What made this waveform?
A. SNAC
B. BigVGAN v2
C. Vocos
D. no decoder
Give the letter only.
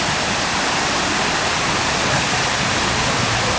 D